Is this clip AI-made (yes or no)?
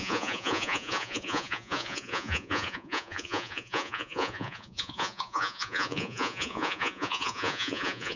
yes